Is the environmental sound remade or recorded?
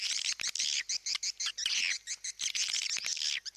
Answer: recorded